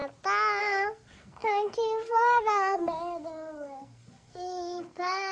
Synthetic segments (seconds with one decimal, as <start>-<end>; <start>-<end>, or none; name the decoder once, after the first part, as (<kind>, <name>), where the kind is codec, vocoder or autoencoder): 0.6-5.3 (codec, SNAC)